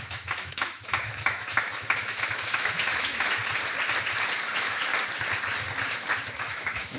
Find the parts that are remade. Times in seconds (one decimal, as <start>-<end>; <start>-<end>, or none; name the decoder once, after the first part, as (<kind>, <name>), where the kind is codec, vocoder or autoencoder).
0.0-3.4 (autoencoder, DAC-VAE); 4.5-4.9; 6.4-7.0